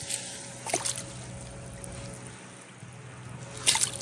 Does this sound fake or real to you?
real